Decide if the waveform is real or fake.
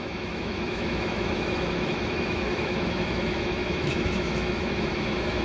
fake